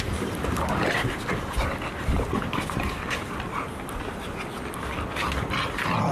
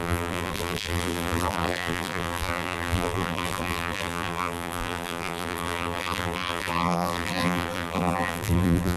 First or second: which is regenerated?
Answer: second